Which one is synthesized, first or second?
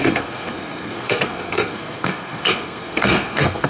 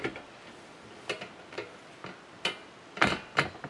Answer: first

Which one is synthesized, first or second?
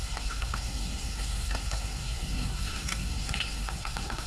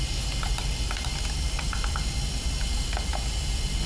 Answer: first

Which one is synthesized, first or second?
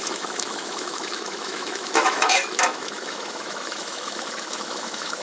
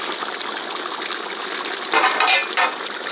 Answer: first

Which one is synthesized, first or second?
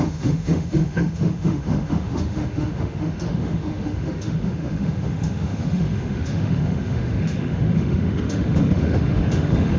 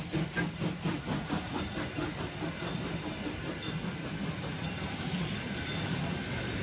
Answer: first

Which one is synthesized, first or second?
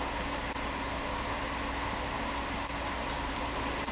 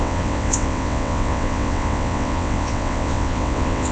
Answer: second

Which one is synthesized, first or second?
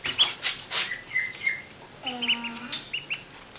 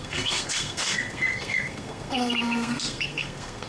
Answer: second